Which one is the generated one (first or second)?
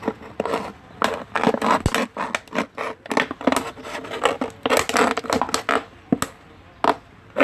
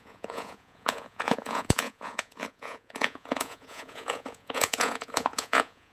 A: second